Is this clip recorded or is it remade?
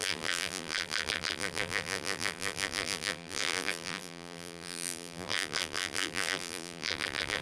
remade